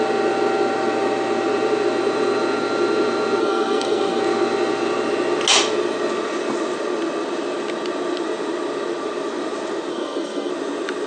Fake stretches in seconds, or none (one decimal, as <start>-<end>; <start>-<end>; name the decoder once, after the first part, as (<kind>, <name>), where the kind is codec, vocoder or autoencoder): 3.4-4.2 (codec, SNAC); 9.9-10.5

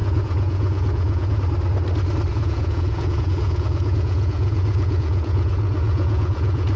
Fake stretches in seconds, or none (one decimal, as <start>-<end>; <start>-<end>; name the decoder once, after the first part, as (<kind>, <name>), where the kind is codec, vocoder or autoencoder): 0.0-1.4 (vocoder, Vocos); 2.3-6.8

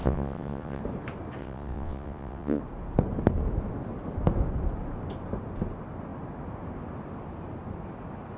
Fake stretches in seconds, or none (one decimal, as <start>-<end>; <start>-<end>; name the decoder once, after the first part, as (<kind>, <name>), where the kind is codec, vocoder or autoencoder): 0.0-0.8 (vocoder, WaveNeXt); 1.4-2.6

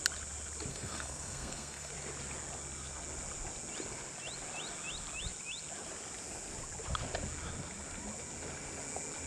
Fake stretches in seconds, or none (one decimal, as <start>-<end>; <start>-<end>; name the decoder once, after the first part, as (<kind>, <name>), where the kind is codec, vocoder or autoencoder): 0.7-1.9 (codec, SNAC)